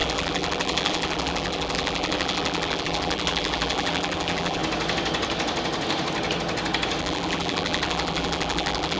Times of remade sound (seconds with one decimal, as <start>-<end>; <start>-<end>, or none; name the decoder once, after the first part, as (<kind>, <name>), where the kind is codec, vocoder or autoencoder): 0.0-4.6 (vocoder, BigVGAN v2); 7.0-9.0